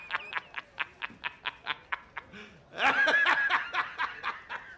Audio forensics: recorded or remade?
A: recorded